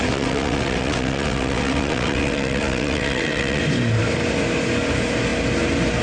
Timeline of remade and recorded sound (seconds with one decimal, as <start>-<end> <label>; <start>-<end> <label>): 0.0-3.6 remade; 3.6-6.0 recorded